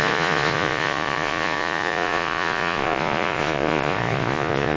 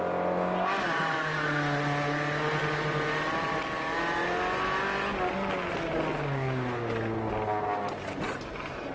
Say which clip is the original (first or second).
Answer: second